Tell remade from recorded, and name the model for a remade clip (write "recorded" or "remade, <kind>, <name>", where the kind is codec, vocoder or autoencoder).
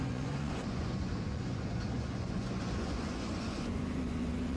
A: remade, vocoder, Vocos